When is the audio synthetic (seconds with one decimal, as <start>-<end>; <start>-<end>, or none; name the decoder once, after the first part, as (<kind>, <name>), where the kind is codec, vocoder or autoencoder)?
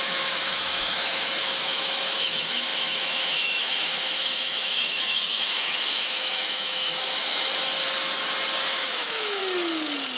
0.0-7.5 (autoencoder, DAC-VAE); 8.7-9.4